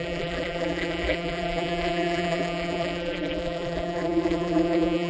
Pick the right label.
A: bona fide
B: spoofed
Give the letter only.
B